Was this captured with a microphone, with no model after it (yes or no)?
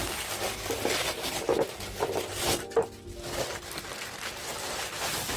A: yes